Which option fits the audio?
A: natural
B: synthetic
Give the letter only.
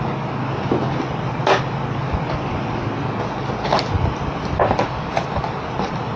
A